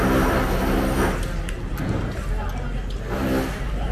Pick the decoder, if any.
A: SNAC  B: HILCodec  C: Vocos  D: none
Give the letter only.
D